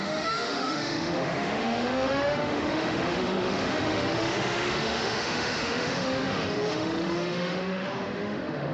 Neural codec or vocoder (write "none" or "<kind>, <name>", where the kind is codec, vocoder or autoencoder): autoencoder, DAC-VAE